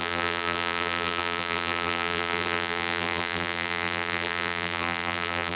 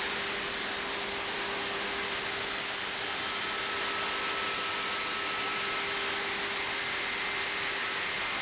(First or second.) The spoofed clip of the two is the first